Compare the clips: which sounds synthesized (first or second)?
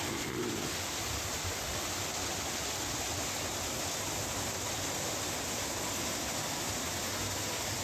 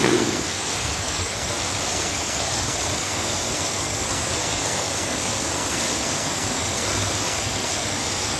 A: second